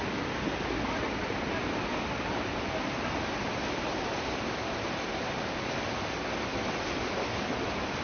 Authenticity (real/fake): real